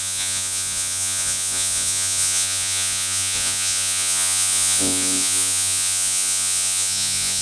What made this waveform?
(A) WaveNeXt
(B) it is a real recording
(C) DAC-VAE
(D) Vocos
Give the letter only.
D